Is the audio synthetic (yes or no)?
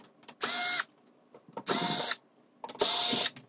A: no